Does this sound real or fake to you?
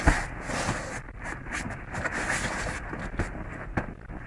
real